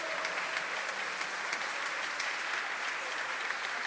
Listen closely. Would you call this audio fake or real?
real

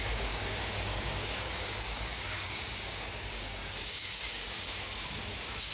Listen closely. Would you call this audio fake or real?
fake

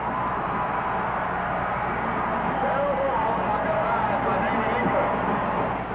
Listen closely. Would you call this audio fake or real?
real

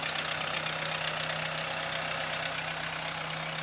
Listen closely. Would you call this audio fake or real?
real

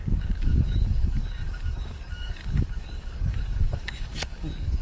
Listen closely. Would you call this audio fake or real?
fake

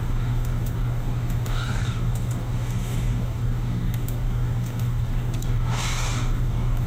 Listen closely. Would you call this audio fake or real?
fake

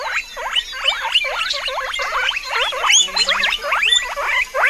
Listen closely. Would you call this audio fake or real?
real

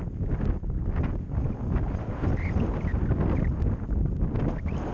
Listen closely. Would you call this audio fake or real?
real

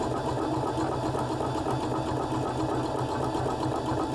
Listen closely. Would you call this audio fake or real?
real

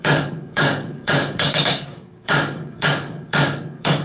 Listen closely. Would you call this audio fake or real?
fake